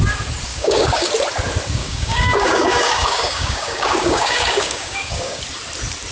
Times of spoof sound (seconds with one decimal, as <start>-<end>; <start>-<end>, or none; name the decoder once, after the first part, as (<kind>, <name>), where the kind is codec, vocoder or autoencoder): 0.5-1.1 (codec, DAC); 1.8-5.4